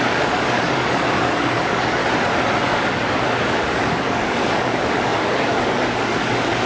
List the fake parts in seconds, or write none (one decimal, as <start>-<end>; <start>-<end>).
0.0-2.0; 2.6-6.7

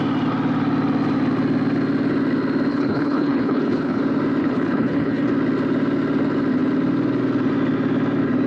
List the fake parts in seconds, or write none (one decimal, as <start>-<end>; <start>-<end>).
2.7-4.0; 4.4-5.3

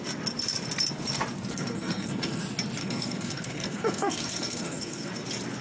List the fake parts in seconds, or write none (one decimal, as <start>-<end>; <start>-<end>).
1.5-2.4; 2.8-5.1

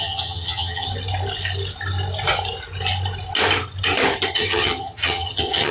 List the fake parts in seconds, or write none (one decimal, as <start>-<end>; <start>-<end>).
0.0-0.9; 4.3-5.7

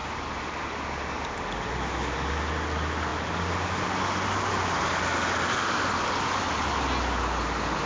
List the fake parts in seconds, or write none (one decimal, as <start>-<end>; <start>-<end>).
none

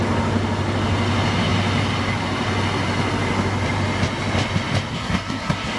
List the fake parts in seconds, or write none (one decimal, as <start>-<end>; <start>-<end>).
4.9-5.8

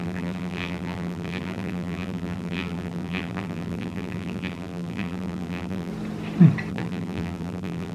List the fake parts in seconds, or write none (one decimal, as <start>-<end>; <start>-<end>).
0.0-5.9; 6.7-7.9

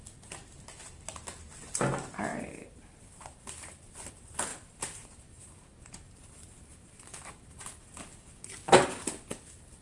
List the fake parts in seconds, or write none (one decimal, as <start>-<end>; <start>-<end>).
2.3-4.1; 4.5-8.3